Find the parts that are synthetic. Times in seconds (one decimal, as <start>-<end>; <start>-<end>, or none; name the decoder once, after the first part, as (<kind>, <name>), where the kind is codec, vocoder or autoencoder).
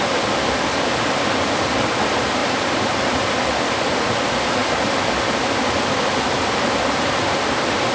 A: none